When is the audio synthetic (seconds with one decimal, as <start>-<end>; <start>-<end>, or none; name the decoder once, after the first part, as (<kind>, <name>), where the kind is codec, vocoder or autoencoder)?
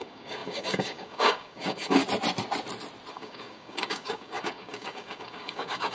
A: 0.0-2.0 (codec, DAC); 3.1-5.9